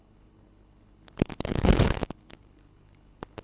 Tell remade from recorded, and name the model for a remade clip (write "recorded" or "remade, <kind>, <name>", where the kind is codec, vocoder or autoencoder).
remade, codec, HILCodec